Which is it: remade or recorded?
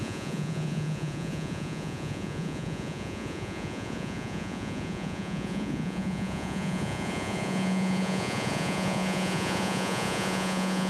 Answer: remade